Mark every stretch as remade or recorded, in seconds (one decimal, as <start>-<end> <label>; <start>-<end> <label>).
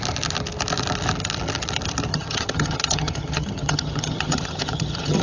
0.0-2.1 recorded; 2.1-5.2 remade